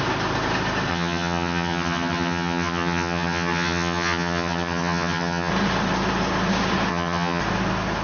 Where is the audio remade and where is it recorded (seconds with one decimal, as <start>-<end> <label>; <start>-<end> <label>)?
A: 0.0-0.9 recorded; 0.9-5.5 remade; 5.5-6.9 recorded; 6.9-7.4 remade; 7.4-8.0 recorded